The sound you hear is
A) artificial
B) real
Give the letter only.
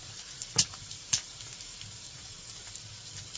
A